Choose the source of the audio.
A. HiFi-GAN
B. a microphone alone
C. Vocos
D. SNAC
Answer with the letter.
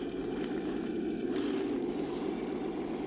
B